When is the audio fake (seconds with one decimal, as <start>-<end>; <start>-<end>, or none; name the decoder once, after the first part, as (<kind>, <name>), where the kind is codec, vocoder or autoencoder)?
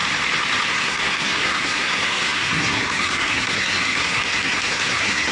0.7-5.3 (codec, SNAC)